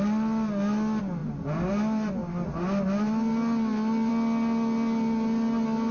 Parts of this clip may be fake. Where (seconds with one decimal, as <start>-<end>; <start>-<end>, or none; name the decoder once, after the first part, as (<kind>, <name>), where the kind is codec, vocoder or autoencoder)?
none